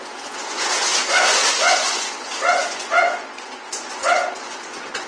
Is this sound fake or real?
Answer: fake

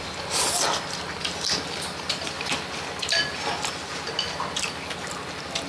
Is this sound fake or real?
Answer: real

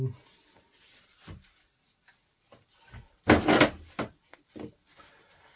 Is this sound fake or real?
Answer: real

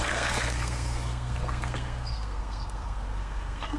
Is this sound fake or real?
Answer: fake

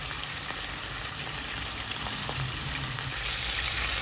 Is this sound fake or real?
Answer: real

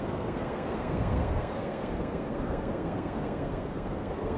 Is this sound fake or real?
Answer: fake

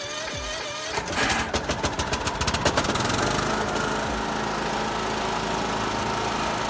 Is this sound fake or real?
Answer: real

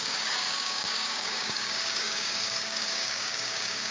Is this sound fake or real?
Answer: fake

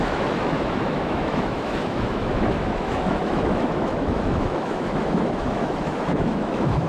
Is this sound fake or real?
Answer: fake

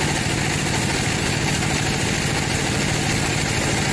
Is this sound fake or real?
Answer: real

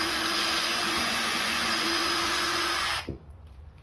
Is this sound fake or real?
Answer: fake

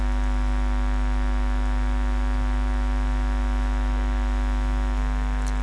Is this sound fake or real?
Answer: real